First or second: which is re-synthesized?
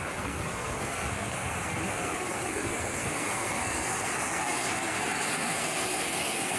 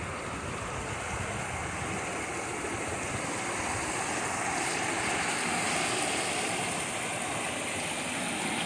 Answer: first